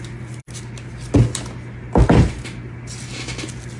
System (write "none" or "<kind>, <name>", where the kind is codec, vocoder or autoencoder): none